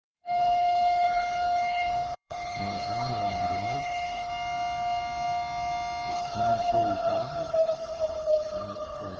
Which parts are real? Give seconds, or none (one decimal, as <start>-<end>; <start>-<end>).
4.3-6.1